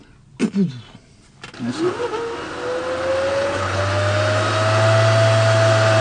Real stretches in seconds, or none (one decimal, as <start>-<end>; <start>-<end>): 0.0-3.3; 3.8-6.0